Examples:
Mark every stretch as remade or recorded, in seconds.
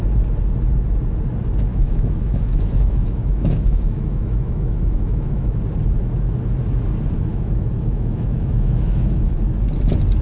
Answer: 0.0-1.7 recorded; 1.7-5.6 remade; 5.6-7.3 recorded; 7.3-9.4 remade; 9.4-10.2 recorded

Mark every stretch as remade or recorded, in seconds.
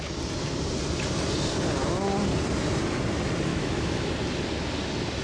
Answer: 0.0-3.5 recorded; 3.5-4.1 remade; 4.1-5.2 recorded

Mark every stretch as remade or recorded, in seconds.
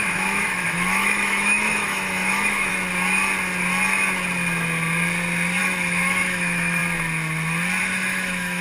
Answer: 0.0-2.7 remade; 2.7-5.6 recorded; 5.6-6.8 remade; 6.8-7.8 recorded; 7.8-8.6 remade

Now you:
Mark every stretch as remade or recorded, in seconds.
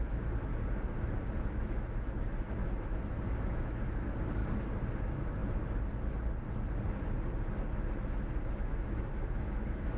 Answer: 0.0-0.5 remade; 0.5-1.4 recorded; 1.4-2.6 remade; 2.6-3.2 recorded; 3.2-4.4 remade; 4.4-5.0 recorded; 5.0-5.4 remade; 5.4-8.5 recorded; 8.5-10.0 remade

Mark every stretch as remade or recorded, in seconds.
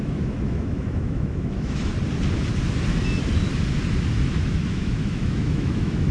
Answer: 0.0-1.9 remade; 1.9-4.3 recorded; 4.3-6.1 remade